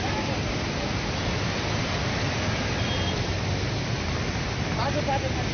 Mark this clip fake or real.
real